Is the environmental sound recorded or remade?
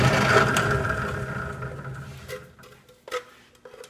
recorded